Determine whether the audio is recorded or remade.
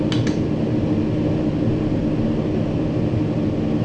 recorded